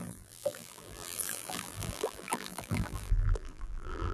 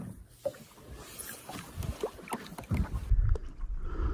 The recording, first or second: second